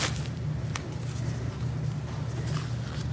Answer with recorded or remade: recorded